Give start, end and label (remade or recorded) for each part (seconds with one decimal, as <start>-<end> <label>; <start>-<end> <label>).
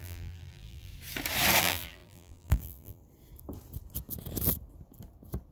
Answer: 0.0-0.9 remade; 0.9-1.6 recorded; 1.6-3.0 remade; 3.0-5.5 recorded